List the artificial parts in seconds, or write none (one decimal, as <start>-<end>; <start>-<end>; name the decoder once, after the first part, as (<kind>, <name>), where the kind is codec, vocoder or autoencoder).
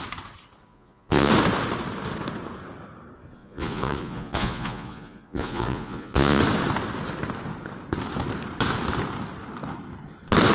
0.7-1.3 (vocoder, Vocos); 3.4-6.4